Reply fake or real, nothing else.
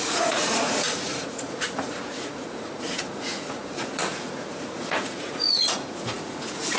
fake